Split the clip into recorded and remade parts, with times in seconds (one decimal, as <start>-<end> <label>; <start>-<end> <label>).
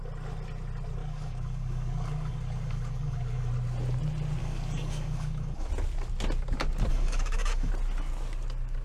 0.0-1.0 recorded; 1.0-3.5 remade; 3.5-4.4 recorded; 4.4-5.7 remade; 5.7-6.9 recorded; 6.9-7.7 remade; 7.7-8.8 recorded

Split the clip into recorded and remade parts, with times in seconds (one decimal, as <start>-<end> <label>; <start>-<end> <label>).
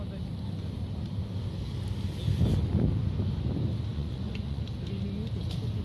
0.0-3.9 recorded; 3.9-4.6 remade; 4.6-5.8 recorded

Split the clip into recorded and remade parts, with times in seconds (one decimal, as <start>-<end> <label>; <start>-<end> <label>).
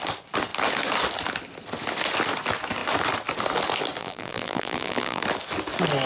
0.0-4.0 recorded; 4.0-5.2 remade; 5.2-6.1 recorded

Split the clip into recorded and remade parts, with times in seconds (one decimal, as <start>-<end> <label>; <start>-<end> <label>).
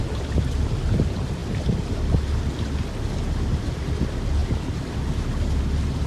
0.0-6.1 recorded